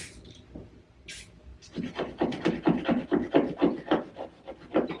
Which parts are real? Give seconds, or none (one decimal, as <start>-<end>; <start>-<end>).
0.0-5.0